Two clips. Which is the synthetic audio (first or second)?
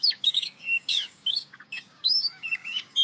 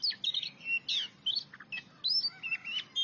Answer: first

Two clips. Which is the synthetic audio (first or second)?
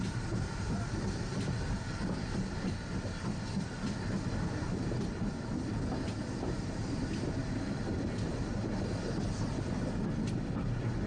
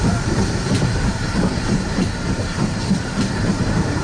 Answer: second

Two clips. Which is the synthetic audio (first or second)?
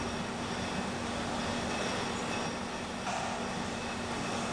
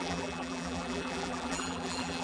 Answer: second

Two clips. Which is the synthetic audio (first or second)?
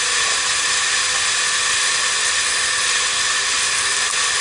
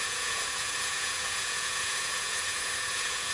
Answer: second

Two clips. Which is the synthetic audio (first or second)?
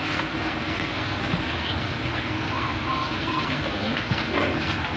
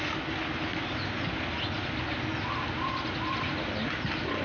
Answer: first